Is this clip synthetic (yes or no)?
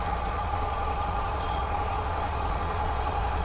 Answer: yes